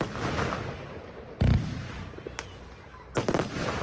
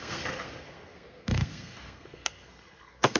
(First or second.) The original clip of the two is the first